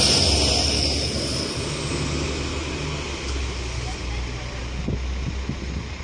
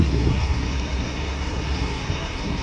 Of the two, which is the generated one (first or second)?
second